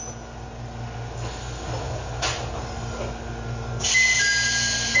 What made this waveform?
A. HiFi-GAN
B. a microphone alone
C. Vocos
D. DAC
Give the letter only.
B